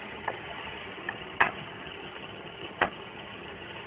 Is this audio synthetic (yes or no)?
yes